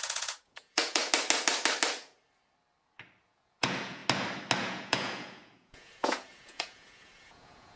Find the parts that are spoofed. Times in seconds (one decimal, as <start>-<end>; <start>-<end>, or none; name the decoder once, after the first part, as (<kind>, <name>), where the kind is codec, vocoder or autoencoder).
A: 0.0-1.0 (vocoder, Vocos); 3.2-4.0; 4.6-7.8